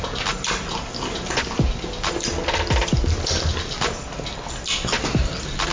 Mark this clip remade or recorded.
recorded